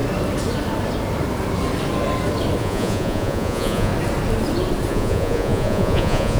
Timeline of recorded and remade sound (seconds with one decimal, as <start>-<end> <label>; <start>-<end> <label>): 0.0-2.6 recorded; 2.6-3.9 remade; 3.9-4.9 recorded; 4.9-6.4 remade